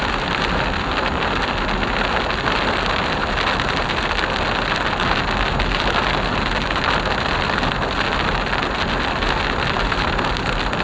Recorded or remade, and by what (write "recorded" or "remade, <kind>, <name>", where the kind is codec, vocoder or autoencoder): recorded